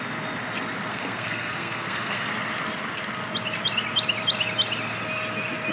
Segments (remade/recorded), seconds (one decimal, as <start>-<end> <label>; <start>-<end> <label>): 0.0-0.9 recorded; 0.9-2.3 remade; 2.3-5.7 recorded